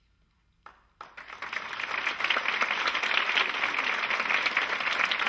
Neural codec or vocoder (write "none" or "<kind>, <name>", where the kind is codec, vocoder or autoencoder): none